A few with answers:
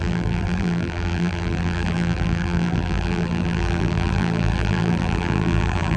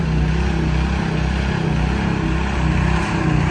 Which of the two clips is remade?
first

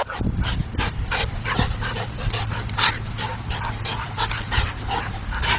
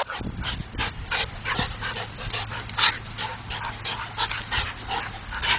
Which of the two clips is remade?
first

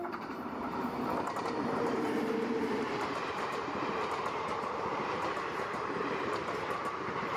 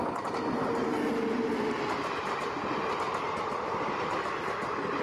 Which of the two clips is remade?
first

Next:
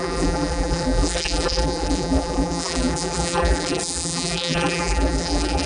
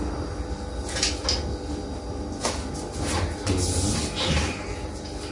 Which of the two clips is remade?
first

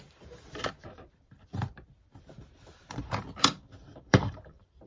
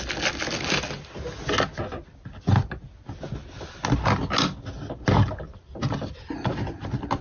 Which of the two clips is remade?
first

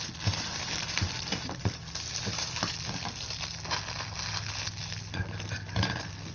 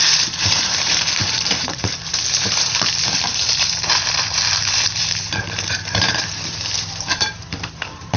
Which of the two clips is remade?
second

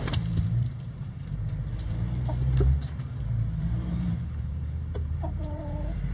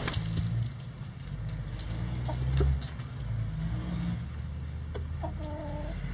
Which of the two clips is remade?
first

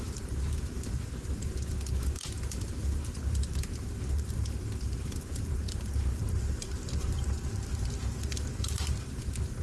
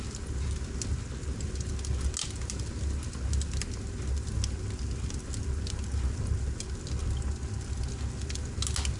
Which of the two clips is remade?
first